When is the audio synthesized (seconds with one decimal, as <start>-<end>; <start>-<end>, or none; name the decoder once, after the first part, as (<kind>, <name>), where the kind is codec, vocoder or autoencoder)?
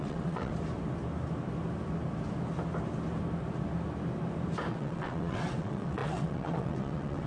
0.0-0.5 (vocoder, WaveNeXt); 4.7-7.3